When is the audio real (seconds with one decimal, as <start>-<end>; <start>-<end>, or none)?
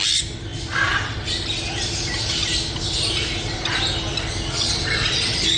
0.0-5.6